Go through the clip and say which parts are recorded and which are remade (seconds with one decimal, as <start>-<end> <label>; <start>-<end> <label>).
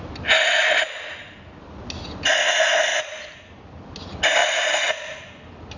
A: 0.0-5.8 recorded